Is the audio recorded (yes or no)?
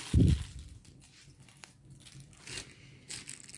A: yes